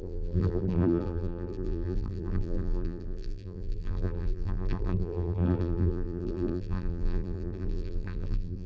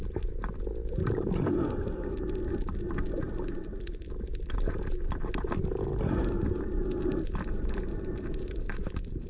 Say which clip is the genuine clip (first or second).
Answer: second